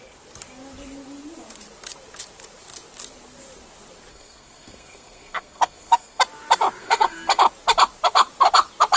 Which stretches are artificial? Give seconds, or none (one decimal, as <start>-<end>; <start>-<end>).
4.1-6.2; 6.8-7.4